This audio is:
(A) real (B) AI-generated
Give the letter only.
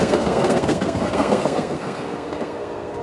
B